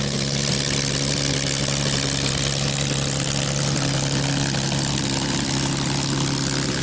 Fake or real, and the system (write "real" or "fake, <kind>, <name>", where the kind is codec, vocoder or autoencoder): real